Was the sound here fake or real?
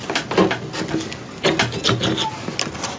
real